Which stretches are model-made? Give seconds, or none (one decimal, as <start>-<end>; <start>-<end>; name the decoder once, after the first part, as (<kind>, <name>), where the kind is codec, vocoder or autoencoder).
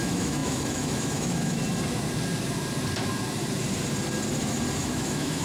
0.0-1.6 (autoencoder, DAC-VAE); 4.8-5.4